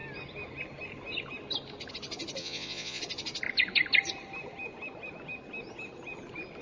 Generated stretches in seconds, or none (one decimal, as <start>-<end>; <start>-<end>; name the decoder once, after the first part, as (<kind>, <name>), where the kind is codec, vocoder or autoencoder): 2.4-3.0 (vocoder, Vocos)